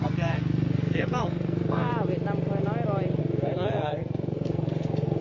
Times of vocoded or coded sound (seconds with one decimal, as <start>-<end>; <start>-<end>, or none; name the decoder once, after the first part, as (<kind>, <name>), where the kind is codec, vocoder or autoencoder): 0.0-1.9 (codec, SNAC); 3.2-5.2